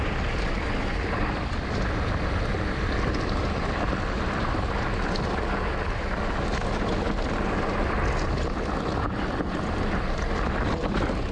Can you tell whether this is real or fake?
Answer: real